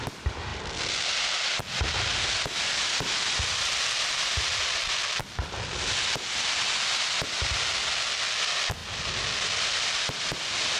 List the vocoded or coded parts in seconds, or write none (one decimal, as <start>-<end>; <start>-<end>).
none